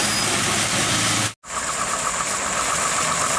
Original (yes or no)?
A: yes